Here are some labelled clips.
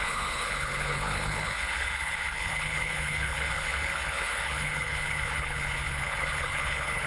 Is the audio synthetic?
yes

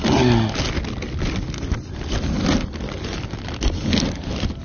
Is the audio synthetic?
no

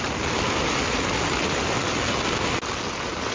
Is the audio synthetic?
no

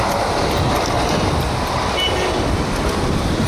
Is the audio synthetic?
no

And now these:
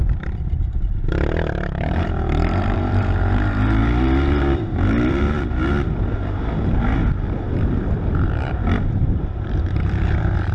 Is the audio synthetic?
yes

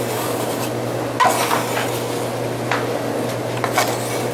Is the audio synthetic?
no